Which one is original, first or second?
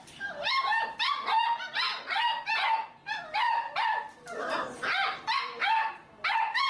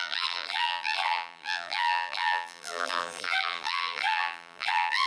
first